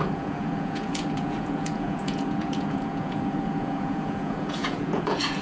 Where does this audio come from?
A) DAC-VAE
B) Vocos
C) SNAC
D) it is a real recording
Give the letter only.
B